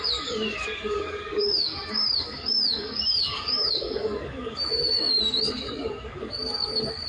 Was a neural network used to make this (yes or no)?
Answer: yes